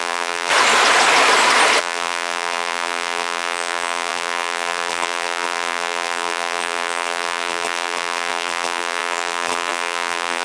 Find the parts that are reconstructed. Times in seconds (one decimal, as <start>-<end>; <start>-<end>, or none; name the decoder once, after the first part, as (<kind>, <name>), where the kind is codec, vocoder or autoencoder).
0.0-0.5 (vocoder, BigVGAN v2); 1.8-10.4